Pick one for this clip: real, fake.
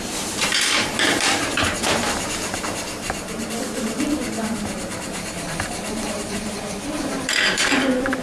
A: fake